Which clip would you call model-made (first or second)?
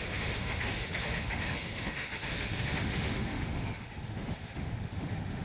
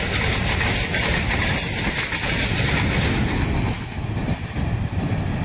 first